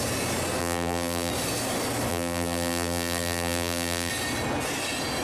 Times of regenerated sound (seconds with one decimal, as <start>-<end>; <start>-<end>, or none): 0.6-1.3; 2.1-4.1